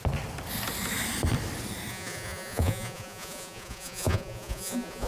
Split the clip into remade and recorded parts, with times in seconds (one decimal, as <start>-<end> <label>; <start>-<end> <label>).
0.0-1.9 recorded; 1.9-5.1 remade